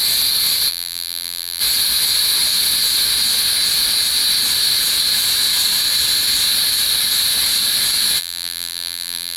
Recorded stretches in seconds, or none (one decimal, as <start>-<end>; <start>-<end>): 0.0-0.7; 1.6-8.2